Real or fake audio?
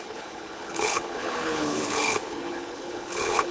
fake